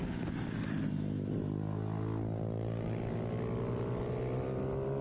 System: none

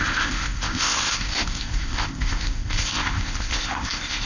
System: codec, ZipCodec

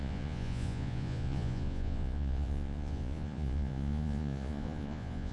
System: vocoder, Vocos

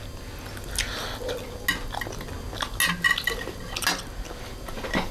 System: none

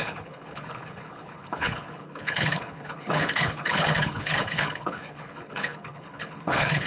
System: codec, HILCodec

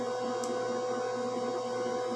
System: none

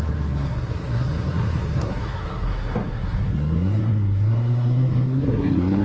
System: codec, SNAC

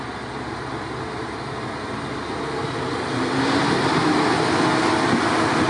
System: none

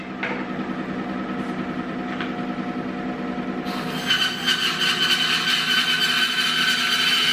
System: none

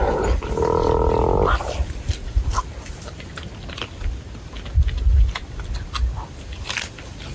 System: none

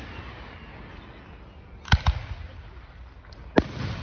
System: none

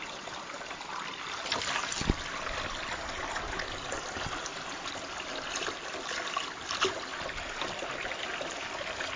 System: none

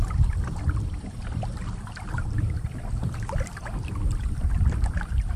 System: vocoder, BigVGAN v2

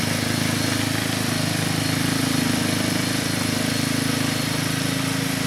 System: none